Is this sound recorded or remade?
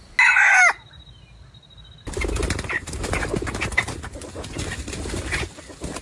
recorded